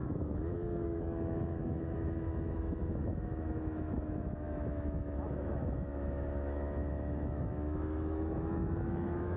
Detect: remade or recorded remade